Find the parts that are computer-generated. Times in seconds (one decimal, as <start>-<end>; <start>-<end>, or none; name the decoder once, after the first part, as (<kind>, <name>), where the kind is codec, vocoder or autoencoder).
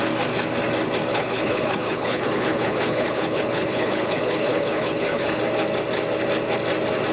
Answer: 1.1-5.4 (codec, HILCodec)